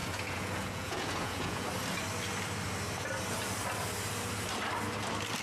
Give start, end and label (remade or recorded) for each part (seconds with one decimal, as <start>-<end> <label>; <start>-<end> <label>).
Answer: 0.0-1.7 remade; 1.7-5.4 recorded